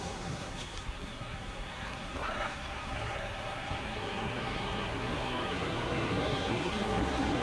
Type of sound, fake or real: fake